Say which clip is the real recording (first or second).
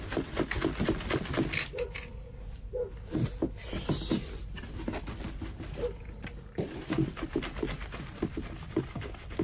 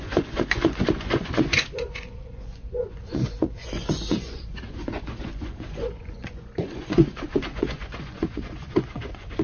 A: first